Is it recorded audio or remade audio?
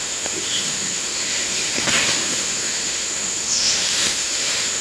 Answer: remade